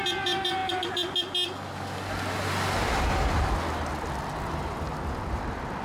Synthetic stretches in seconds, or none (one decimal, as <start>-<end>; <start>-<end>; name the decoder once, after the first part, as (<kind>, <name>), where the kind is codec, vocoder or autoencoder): none